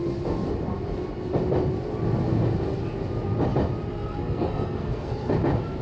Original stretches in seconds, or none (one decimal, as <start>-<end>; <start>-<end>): 0.0-3.9; 5.3-5.8